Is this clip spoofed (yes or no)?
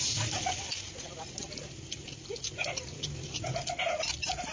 no